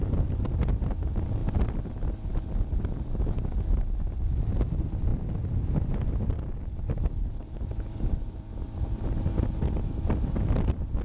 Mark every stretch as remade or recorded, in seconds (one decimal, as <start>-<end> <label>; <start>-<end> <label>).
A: 0.0-0.6 remade; 0.6-5.1 recorded; 5.1-9.5 remade; 9.5-11.0 recorded